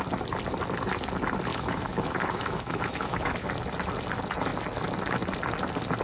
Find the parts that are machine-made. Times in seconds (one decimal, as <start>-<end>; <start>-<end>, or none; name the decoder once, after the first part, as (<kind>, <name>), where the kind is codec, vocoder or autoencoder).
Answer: 1.5-3.5 (autoencoder, DAC-VAE)